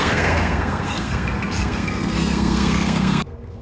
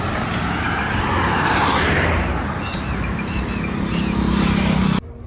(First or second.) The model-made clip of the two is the first